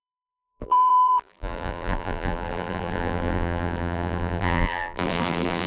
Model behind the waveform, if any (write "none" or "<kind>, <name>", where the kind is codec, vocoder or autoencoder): vocoder, BigVGAN v2